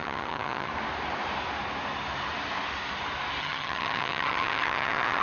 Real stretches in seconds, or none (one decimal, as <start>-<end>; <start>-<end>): 0.7-3.4